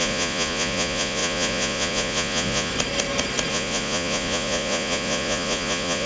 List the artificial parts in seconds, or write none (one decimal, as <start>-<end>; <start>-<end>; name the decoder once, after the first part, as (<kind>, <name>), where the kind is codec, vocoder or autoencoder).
0.0-2.7 (vocoder, Vocos); 3.5-6.1